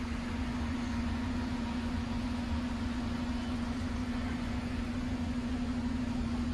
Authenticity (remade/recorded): remade